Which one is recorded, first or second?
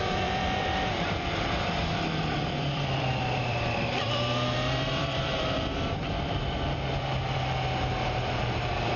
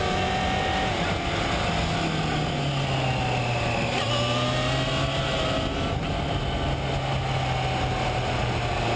second